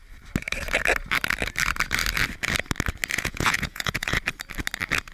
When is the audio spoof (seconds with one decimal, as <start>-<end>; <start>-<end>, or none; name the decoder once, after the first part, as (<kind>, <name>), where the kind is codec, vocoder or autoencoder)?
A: 3.1-4.2 (vocoder, Vocos)